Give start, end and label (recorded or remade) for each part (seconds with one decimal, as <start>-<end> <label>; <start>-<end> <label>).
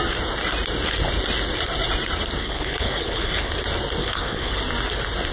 0.0-2.4 recorded; 2.4-3.5 remade; 3.5-4.0 recorded; 4.0-4.6 remade; 4.6-5.3 recorded